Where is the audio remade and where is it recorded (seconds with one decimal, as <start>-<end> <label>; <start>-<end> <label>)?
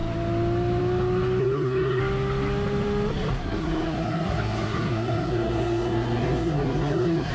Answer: 0.0-1.4 recorded; 1.4-2.0 remade; 2.0-3.3 recorded; 3.3-7.3 remade